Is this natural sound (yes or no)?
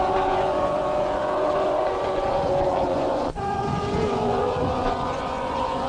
no